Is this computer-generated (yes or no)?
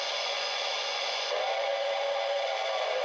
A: yes